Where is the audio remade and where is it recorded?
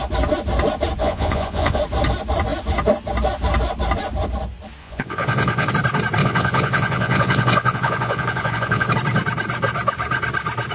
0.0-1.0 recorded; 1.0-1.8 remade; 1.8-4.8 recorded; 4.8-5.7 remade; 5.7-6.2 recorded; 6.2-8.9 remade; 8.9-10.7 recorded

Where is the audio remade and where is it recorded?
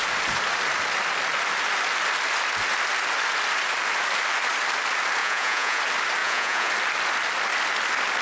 0.0-5.2 recorded; 5.2-5.8 remade; 5.8-6.2 recorded; 6.2-6.7 remade; 6.7-8.2 recorded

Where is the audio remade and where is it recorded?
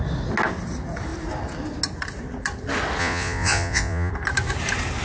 0.0-3.0 recorded; 3.0-4.1 remade; 4.1-5.0 recorded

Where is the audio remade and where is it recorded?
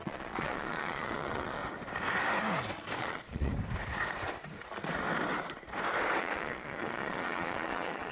0.0-1.6 remade; 1.6-3.0 recorded; 3.0-3.5 remade; 3.5-6.2 recorded; 6.2-8.1 remade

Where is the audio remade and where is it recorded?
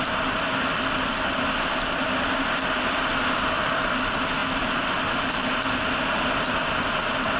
0.0-7.4 recorded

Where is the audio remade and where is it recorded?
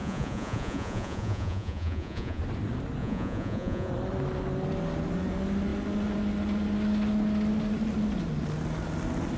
0.0-2.4 remade; 2.4-3.0 recorded; 3.0-3.9 remade; 3.9-9.4 recorded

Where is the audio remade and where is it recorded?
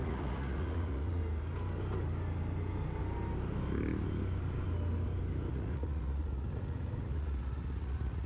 0.0-1.2 remade; 1.2-5.5 recorded; 5.5-8.3 remade